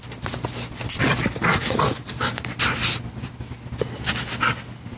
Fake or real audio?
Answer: real